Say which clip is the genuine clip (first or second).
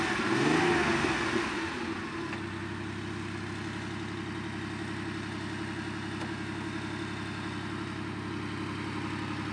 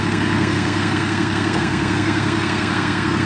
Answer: first